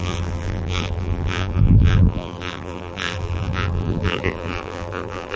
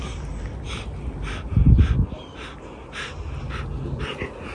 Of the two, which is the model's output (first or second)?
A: first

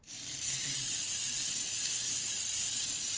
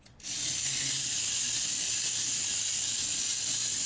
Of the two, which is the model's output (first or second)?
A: first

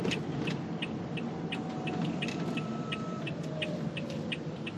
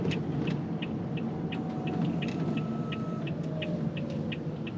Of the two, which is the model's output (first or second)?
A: first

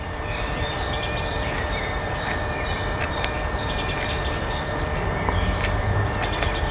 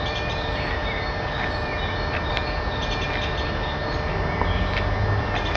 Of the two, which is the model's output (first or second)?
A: first